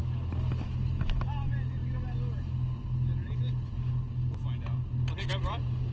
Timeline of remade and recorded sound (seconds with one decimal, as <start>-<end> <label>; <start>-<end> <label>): 0.0-5.9 recorded